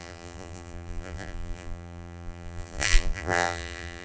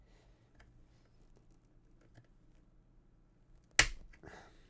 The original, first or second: second